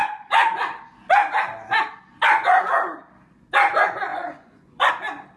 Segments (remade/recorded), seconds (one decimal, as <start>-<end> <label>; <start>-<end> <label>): 0.0-0.6 remade; 0.6-4.1 recorded; 4.1-4.9 remade; 4.9-5.4 recorded